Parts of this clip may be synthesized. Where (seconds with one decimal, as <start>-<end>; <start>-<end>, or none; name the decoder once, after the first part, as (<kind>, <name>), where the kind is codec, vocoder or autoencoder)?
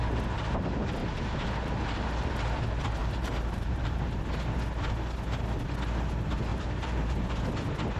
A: 1.0-2.6 (vocoder, BigVGAN v2); 3.0-4.2; 6.5-7.3